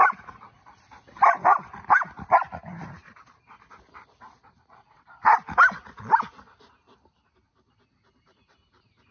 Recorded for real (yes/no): yes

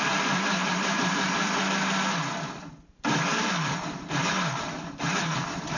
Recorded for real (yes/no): no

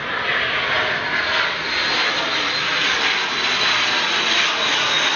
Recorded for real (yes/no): yes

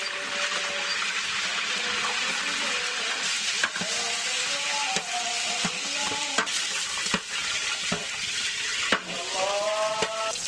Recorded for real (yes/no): yes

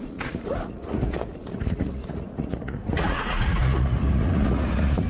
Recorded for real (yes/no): no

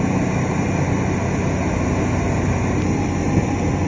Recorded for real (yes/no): yes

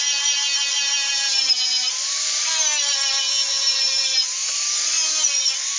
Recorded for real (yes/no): no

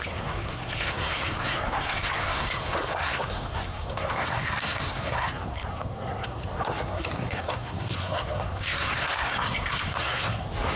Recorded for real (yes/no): no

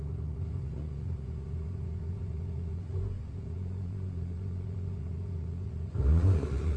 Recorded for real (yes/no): no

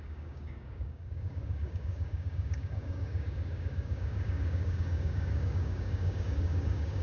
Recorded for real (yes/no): no